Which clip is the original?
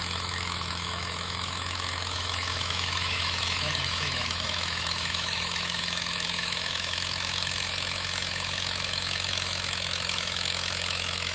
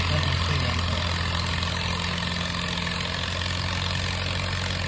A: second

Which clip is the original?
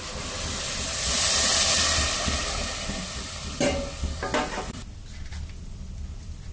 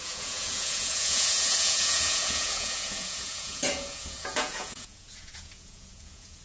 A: first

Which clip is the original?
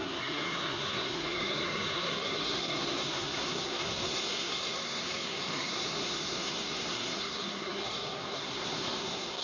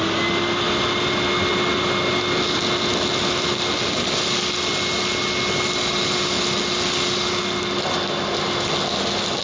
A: second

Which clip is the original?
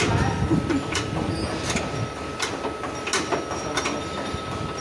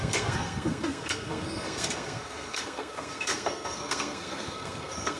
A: first